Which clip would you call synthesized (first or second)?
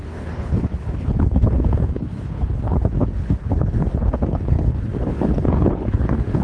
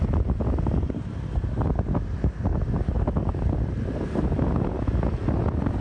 first